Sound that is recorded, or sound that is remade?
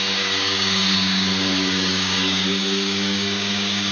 remade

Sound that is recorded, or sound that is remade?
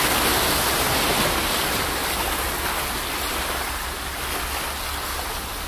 recorded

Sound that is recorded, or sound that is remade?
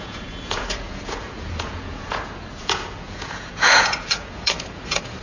remade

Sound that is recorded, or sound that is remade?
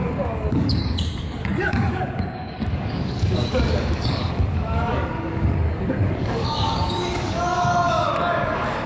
remade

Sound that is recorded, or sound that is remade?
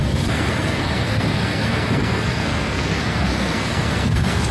remade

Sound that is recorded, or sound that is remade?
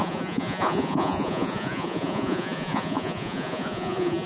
remade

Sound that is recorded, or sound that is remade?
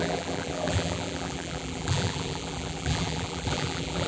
remade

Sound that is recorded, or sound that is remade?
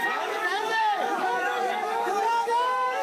remade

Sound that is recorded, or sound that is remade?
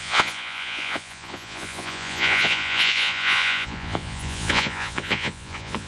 remade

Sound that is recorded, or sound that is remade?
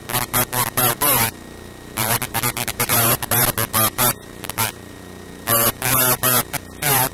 remade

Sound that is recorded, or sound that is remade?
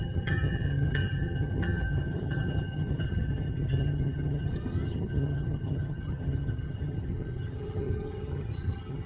remade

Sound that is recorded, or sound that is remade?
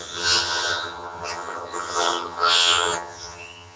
remade